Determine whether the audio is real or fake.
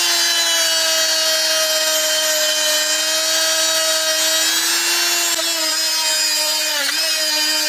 real